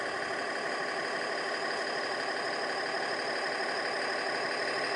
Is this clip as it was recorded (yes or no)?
yes